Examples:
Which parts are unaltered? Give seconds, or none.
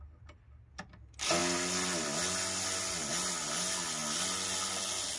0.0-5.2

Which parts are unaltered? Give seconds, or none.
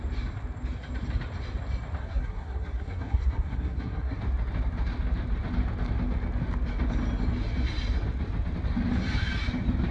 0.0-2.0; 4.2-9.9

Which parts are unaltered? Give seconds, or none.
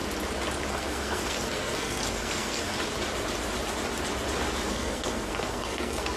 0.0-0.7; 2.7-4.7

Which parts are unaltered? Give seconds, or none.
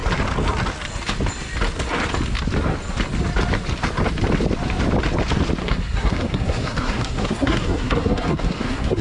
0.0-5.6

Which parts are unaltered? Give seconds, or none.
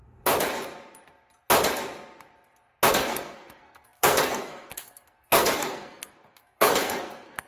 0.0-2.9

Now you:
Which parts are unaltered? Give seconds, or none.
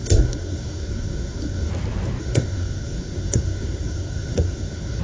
1.7-2.2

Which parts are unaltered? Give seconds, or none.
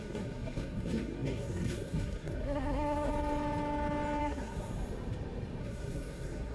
3.1-4.2; 4.7-5.6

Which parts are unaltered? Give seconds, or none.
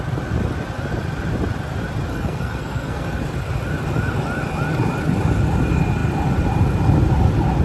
0.0-2.1; 3.2-7.6